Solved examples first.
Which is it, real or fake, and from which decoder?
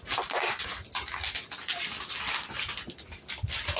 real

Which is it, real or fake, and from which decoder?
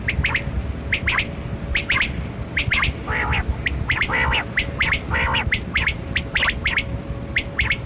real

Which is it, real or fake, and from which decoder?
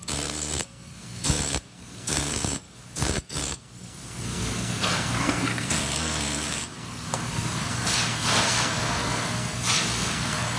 fake, codec, SNAC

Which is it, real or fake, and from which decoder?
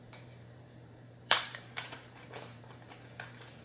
fake, vocoder, BigVGAN v2